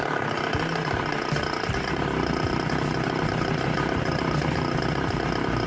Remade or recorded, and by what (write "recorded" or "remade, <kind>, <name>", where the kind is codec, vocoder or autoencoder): recorded